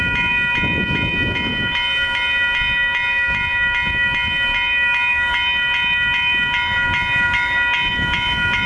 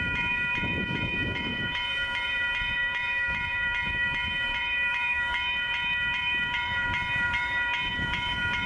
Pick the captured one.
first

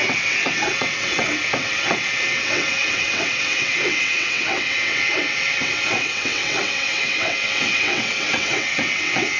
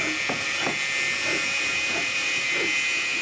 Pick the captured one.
second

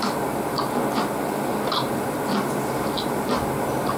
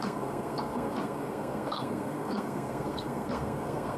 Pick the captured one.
first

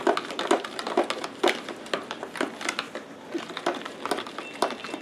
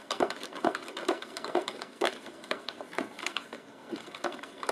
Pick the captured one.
first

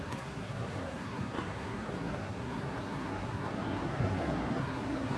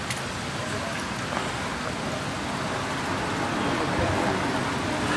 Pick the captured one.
second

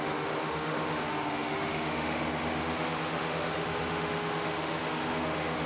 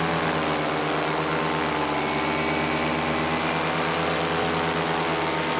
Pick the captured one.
second